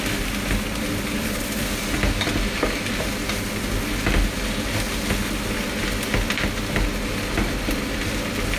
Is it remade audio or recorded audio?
recorded